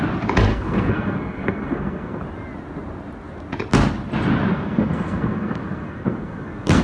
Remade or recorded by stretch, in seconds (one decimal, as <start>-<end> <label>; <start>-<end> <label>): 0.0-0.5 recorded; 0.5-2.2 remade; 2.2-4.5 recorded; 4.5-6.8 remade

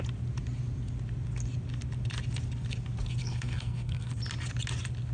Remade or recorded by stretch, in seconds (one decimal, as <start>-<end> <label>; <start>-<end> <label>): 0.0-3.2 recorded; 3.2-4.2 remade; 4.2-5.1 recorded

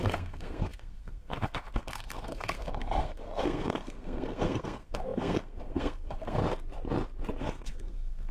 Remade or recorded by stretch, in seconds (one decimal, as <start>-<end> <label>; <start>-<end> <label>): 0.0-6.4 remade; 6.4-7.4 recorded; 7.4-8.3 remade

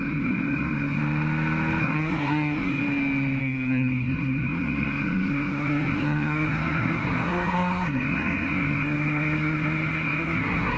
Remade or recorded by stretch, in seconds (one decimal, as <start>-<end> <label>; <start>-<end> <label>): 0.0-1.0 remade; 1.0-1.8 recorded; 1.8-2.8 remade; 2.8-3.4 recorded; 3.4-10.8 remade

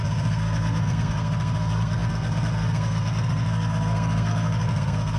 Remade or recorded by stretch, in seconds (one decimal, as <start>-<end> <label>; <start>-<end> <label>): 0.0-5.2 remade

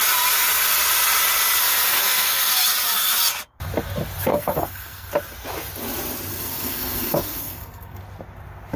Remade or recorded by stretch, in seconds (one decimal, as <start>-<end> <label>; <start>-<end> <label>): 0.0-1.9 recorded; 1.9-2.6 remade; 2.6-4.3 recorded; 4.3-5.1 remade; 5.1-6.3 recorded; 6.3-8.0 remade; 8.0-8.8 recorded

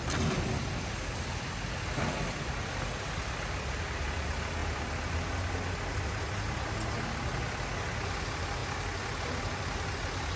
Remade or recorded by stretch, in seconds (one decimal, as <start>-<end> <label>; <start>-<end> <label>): 0.0-10.4 recorded

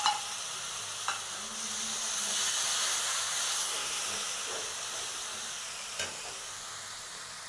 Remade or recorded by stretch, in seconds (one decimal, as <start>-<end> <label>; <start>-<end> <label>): 0.0-3.5 recorded; 3.5-4.0 remade; 4.0-7.5 recorded